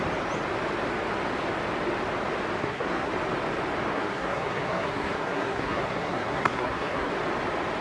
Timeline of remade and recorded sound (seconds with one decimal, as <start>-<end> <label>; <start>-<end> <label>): 0.0-2.6 recorded; 2.6-3.1 remade; 3.1-3.9 recorded; 3.9-7.1 remade; 7.1-7.8 recorded